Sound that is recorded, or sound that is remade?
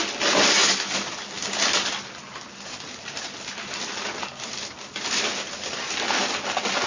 recorded